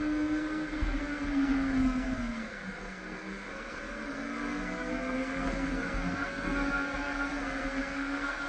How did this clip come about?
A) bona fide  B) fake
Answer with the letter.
B